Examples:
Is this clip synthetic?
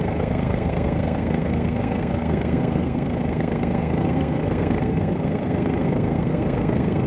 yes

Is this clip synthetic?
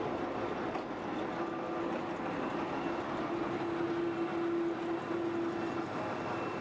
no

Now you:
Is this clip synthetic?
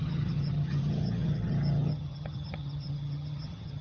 yes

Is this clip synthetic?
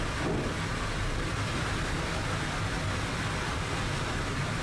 no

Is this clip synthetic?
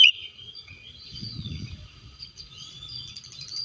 yes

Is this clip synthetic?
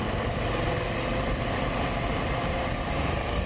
yes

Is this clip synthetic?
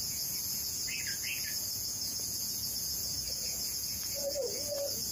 yes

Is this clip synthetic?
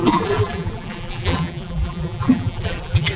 yes